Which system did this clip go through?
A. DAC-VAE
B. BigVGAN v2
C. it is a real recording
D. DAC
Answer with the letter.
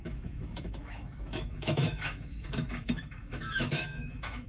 A